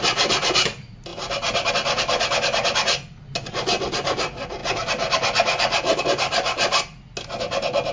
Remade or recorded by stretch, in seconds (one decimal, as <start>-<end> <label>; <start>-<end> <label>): 0.0-7.9 recorded